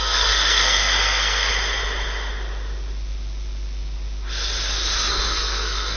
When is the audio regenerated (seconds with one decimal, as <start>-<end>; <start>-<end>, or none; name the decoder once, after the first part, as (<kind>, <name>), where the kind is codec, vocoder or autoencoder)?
0.0-1.5 (codec, SNAC); 5.1-6.0

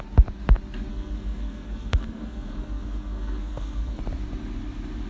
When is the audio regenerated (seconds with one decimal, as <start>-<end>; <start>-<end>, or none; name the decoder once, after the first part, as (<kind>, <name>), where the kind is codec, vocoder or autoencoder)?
0.9-4.0 (codec, SNAC)